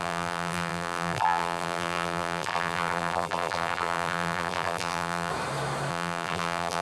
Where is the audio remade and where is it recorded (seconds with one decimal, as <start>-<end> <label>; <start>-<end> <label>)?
0.0-5.3 remade; 5.3-5.9 recorded; 5.9-6.8 remade